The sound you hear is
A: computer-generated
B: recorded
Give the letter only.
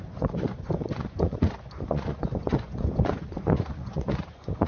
A